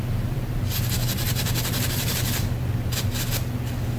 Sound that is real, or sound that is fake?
fake